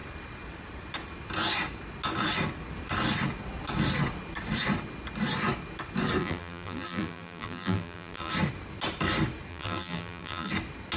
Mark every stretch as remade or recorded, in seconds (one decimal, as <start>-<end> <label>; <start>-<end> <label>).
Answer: 0.0-6.2 recorded; 6.2-8.3 remade; 8.3-9.5 recorded; 9.5-10.5 remade; 10.5-11.0 recorded